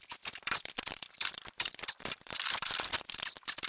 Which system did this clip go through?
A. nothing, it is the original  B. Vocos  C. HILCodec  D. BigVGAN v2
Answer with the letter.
D